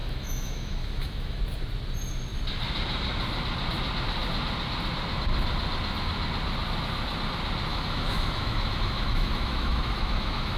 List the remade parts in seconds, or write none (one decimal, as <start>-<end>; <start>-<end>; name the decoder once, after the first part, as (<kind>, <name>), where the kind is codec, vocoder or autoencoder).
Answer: 0.0-1.4 (autoencoder, DAC-VAE); 7.7-10.6